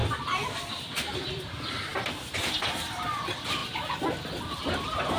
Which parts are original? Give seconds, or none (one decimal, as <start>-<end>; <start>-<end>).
0.0-0.8; 3.6-4.4